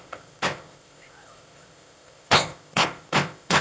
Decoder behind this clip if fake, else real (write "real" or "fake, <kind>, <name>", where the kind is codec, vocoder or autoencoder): fake, codec, ZipCodec